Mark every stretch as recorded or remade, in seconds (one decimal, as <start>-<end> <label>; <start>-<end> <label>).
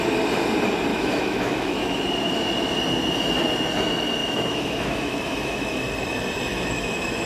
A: 0.0-0.9 recorded; 0.9-2.0 remade; 2.0-4.2 recorded; 4.2-5.8 remade; 5.8-6.5 recorded; 6.5-7.3 remade